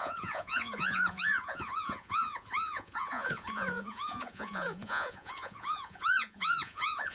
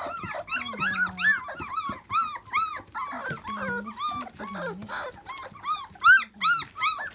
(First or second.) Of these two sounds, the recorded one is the second